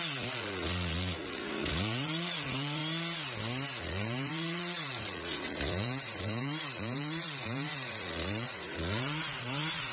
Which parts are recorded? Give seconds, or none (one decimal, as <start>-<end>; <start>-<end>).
2.8-3.8